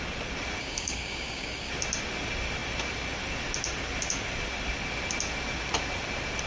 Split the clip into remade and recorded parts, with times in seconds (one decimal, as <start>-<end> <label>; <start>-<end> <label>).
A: 0.0-0.6 recorded; 0.6-1.7 remade; 1.7-6.5 recorded